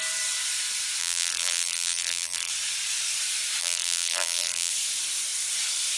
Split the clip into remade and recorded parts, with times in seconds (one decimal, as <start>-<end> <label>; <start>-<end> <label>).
0.0-1.0 recorded; 1.0-2.5 remade; 2.5-3.6 recorded; 3.6-4.7 remade; 4.7-6.0 recorded